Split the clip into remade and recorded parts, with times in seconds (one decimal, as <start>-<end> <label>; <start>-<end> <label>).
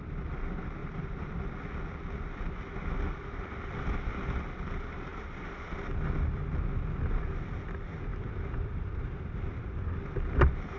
0.0-0.8 recorded; 0.8-1.3 remade; 1.3-8.1 recorded; 8.1-9.7 remade; 9.7-10.8 recorded